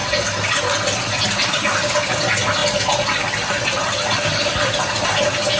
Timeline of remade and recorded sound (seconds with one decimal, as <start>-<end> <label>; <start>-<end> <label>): 0.0-5.6 recorded